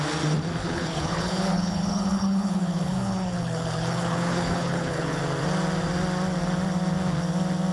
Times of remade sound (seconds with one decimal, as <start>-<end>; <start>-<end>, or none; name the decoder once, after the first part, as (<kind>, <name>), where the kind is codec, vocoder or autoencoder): 0.6-5.2 (codec, HILCodec)